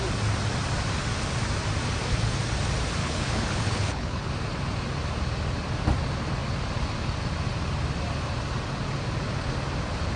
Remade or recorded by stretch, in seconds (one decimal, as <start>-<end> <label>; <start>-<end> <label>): 0.0-3.0 recorded; 3.0-4.3 remade; 4.3-10.2 recorded